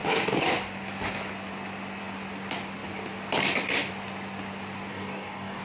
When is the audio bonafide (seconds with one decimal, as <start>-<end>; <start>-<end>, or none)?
0.0-4.9